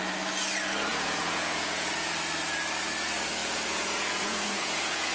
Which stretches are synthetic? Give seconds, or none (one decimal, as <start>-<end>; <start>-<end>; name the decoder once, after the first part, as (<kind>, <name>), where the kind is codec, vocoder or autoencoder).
0.9-2.1 (vocoder, Vocos); 3.4-5.1